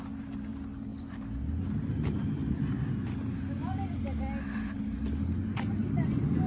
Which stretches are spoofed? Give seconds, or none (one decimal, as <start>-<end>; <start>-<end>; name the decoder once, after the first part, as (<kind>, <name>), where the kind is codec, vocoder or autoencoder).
none